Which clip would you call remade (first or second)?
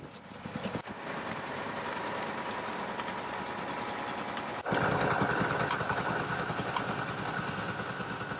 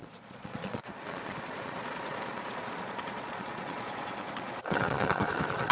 second